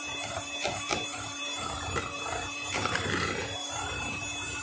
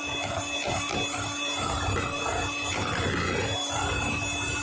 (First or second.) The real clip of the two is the second